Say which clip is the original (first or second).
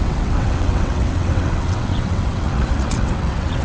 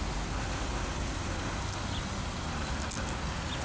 second